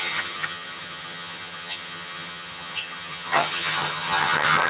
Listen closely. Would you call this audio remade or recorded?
remade